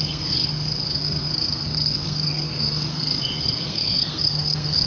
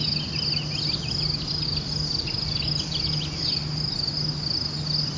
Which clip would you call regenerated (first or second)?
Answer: first